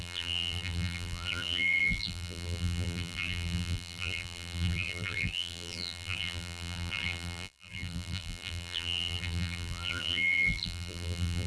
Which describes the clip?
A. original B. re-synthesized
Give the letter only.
B